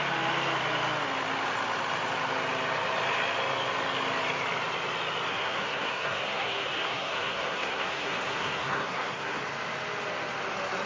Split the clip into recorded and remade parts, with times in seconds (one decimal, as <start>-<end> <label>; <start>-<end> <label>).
0.0-5.3 recorded; 5.3-9.4 remade; 9.4-10.9 recorded